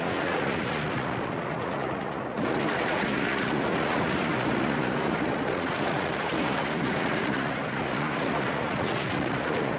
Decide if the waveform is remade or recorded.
remade